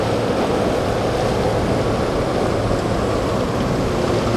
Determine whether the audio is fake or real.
real